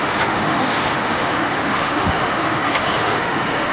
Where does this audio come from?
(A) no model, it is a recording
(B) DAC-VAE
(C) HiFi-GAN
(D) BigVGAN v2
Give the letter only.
B